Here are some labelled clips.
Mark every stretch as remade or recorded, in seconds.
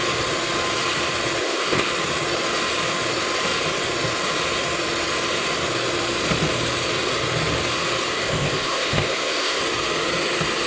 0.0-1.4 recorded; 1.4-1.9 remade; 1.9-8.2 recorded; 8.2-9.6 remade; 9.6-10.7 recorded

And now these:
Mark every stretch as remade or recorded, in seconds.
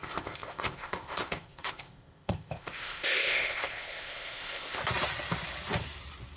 0.0-4.8 remade; 4.8-6.4 recorded